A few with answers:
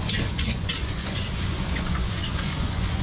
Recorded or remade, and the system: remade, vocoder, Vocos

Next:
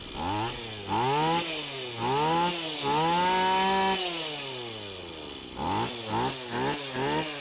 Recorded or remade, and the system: recorded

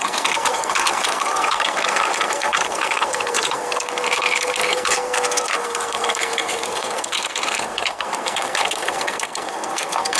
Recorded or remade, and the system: remade, codec, SNAC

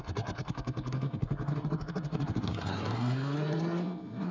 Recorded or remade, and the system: remade, codec, SNAC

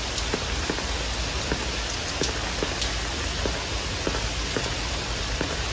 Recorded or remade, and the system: recorded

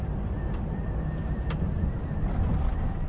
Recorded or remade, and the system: recorded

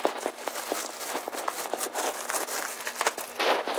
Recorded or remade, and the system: recorded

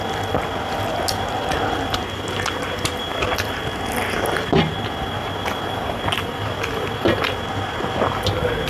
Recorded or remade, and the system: recorded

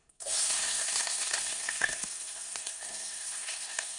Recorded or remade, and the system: remade, codec, SNAC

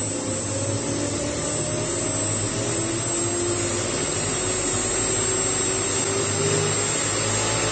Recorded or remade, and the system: recorded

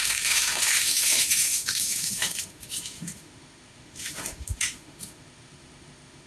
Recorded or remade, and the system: remade, autoencoder, DAC-VAE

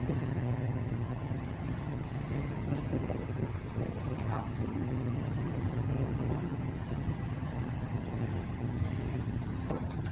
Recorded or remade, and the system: remade, vocoder, HiFi-GAN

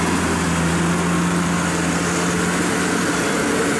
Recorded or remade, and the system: recorded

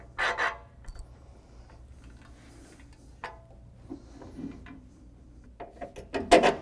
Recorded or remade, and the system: recorded